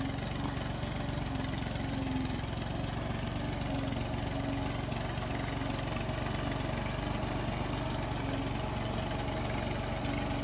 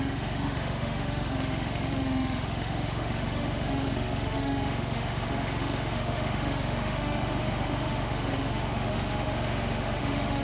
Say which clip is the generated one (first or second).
second